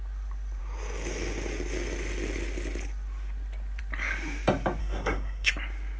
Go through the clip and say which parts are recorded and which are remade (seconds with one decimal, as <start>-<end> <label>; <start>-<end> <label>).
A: 0.0-4.8 recorded; 4.8-5.5 remade; 5.5-6.0 recorded

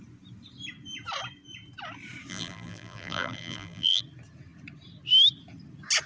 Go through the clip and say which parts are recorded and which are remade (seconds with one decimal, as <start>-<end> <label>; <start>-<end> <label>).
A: 0.0-2.3 recorded; 2.3-4.0 remade; 4.0-6.1 recorded

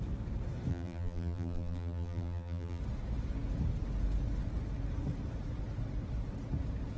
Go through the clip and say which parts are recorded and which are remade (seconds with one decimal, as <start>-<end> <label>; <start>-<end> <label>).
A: 0.0-0.7 recorded; 0.7-2.8 remade; 2.8-7.0 recorded

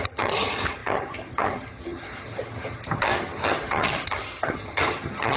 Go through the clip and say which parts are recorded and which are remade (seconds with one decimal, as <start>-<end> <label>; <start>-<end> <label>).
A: 0.0-5.4 remade

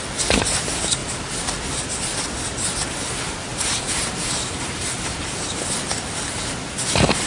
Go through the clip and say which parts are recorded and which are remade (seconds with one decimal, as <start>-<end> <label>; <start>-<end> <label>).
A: 0.0-3.5 recorded; 3.5-5.4 remade; 5.4-7.3 recorded